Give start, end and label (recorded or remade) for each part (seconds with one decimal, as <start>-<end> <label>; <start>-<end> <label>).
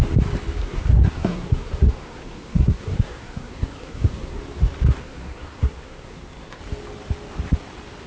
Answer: 0.0-0.6 recorded; 0.6-4.4 remade; 4.4-5.0 recorded; 5.0-6.6 remade; 6.6-8.1 recorded